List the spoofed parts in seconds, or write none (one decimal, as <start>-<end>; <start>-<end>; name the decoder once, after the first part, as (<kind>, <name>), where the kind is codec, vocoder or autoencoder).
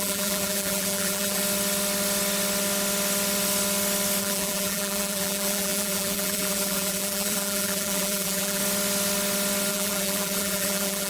0.0-1.4 (vocoder, BigVGAN v2); 4.2-8.6; 9.7-11.1